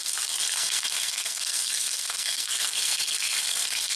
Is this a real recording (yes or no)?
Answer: no